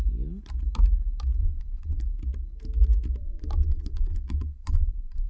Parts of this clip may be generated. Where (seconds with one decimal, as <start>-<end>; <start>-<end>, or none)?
1.4-2.0; 3.2-5.3